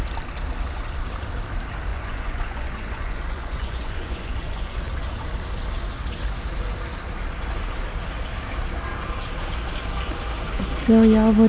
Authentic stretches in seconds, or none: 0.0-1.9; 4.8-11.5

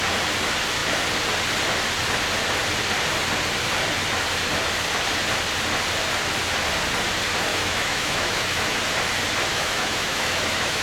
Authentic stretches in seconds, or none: 0.0-7.5; 8.8-9.5

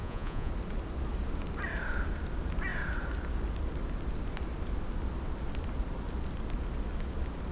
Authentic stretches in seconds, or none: 0.5-7.5

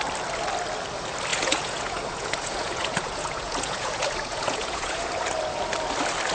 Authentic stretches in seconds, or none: 0.0-1.3; 5.1-6.3

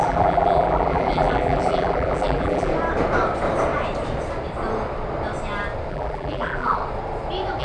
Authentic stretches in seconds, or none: 2.7-5.9; 6.8-7.6

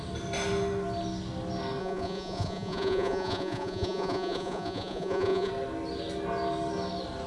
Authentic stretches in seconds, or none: 0.0-1.8; 5.5-7.3